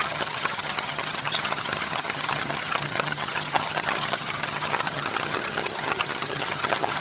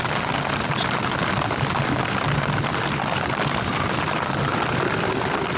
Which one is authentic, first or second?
second